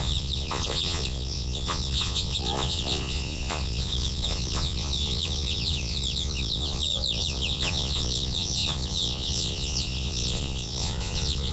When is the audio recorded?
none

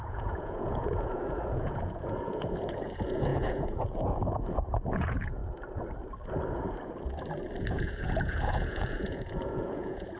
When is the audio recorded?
5.4-7.6

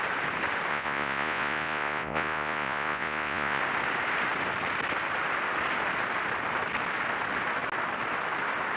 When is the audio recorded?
0.0-0.7; 3.6-8.8

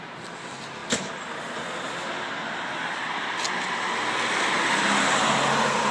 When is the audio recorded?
0.0-5.9

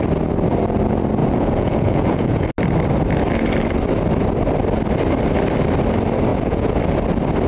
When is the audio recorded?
0.0-1.2; 2.5-6.3; 6.8-7.5

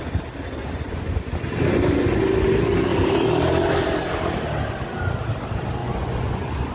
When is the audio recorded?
0.0-0.6; 1.2-5.8

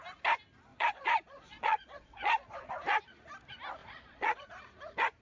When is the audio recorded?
0.0-0.7; 2.7-3.8; 4.5-5.2

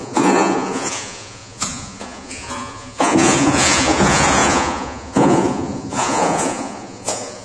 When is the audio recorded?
none